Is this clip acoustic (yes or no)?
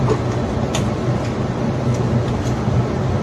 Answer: yes